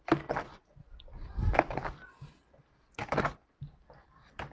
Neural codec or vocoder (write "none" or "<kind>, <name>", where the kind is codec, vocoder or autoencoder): none